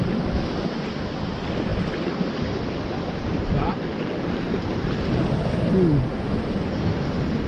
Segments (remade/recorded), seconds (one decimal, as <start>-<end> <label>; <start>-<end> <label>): 0.0-3.0 recorded; 3.0-4.9 remade; 4.9-7.5 recorded